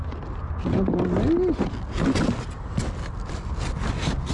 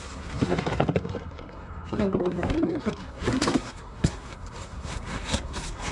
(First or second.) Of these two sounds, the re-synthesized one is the second